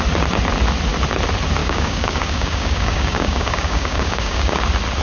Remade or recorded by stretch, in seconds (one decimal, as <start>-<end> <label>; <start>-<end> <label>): 0.0-1.6 recorded; 1.6-4.6 remade; 4.6-5.0 recorded